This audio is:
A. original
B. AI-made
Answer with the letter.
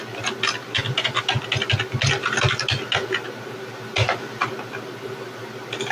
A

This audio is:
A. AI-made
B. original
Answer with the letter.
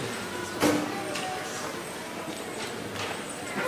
B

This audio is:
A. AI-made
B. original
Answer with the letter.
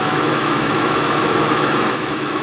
A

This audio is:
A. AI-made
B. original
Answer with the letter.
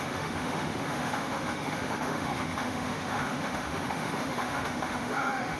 A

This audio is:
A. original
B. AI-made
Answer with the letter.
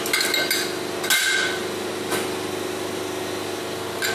A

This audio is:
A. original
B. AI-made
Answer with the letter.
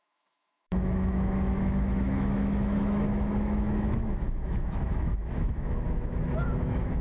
B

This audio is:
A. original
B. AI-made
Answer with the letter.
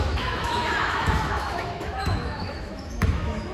B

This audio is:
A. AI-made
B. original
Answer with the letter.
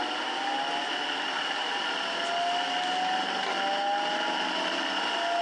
B